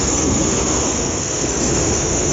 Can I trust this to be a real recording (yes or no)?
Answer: no